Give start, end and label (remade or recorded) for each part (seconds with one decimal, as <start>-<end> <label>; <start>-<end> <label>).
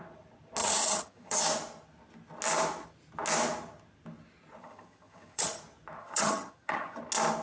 0.0-0.6 recorded; 0.6-1.4 remade; 1.4-4.6 recorded; 4.6-5.6 remade; 5.6-6.0 recorded; 6.0-7.0 remade; 7.0-7.4 recorded